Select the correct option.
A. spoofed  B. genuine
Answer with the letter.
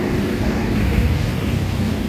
A